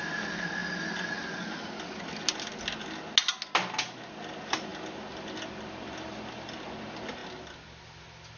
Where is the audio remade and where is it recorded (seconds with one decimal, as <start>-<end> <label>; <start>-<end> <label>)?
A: 0.0-8.4 recorded